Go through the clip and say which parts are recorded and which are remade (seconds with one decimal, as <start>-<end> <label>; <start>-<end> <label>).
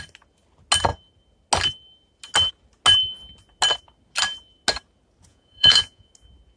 0.0-5.3 recorded; 5.3-6.1 remade; 6.1-6.6 recorded